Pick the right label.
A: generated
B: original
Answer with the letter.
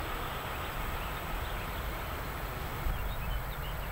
B